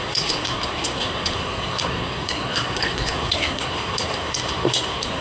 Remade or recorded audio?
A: remade